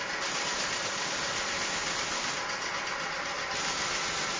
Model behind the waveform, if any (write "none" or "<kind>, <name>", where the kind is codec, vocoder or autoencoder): none